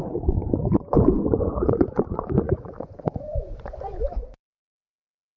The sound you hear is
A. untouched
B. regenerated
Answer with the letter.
B